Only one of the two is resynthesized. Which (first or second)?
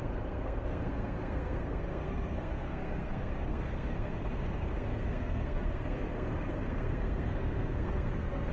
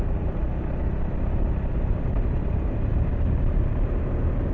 first